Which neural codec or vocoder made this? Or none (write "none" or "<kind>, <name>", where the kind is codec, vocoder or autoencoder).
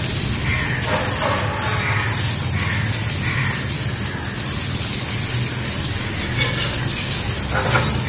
none